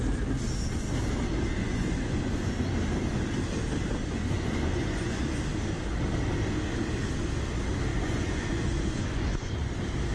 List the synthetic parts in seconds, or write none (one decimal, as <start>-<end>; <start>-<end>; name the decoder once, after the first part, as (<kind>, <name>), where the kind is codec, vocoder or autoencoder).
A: 1.6-2.5 (vocoder, Vocos); 4.0-5.4; 7.9-9.7